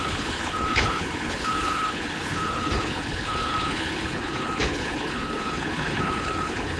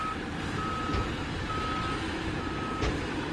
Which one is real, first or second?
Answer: second